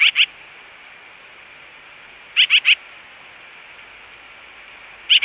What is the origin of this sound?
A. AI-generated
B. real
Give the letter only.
B